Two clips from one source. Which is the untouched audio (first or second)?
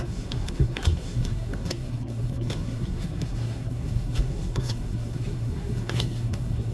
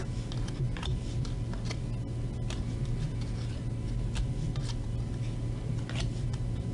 second